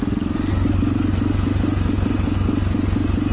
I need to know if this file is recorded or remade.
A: recorded